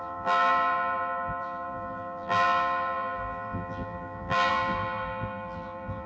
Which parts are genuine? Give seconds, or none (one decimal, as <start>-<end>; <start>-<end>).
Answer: none